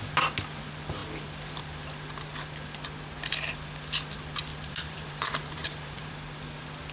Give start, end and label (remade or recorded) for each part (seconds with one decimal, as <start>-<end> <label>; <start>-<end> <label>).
0.0-4.5 recorded; 4.5-6.1 remade; 6.1-6.9 recorded